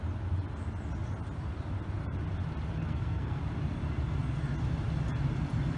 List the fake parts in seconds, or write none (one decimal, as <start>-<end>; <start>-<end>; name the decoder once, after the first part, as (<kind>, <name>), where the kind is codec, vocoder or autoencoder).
2.8-3.4 (codec, SNAC)